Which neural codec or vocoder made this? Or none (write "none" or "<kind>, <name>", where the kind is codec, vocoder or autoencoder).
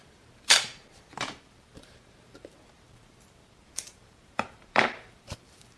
vocoder, BigVGAN v2